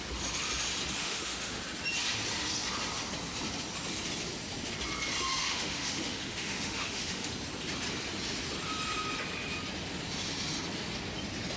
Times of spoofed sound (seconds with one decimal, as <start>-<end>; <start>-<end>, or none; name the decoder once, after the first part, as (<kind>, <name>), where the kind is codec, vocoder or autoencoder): 1.0-1.6 (autoencoder, DAC-VAE); 5.4-7.3